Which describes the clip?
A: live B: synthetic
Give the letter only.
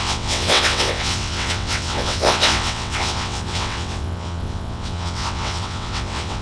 B